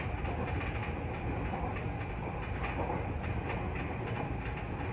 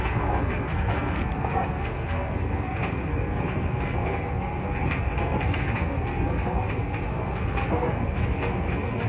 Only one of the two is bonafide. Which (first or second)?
first